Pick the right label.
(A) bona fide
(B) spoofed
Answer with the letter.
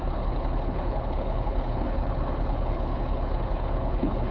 B